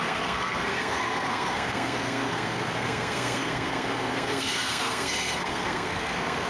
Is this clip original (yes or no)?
no